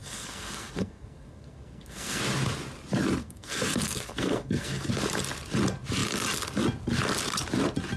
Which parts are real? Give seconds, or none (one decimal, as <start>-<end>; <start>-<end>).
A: 2.2-3.2; 4.9-8.0